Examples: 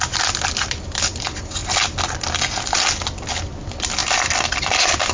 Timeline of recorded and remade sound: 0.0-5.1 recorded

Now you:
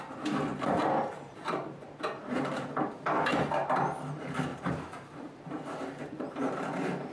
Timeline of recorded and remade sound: 0.0-0.5 recorded; 0.5-2.9 remade; 2.9-3.3 recorded; 3.3-3.8 remade; 3.8-4.5 recorded; 4.5-7.1 remade

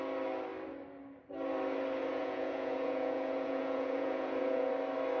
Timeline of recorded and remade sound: 0.0-2.1 recorded; 2.1-4.7 remade; 4.7-5.2 recorded

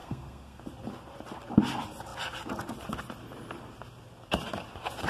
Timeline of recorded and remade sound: 0.0-0.6 remade; 0.6-5.1 recorded

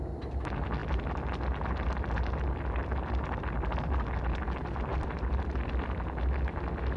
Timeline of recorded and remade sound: 0.0-4.9 recorded; 4.9-5.7 remade; 5.7-7.0 recorded

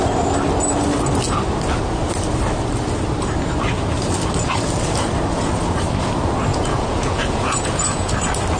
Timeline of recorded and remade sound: 0.0-6.5 recorded; 6.5-8.1 remade; 8.1-8.6 recorded